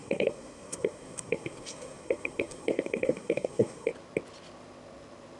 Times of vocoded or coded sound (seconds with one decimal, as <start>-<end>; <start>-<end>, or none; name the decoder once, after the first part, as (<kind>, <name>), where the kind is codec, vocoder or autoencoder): 0.0-3.9 (codec, SNAC)